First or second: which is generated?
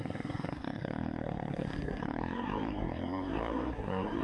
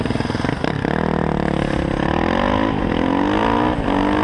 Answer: first